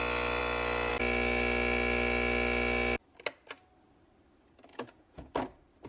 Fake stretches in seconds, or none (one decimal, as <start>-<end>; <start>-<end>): 4.7-5.3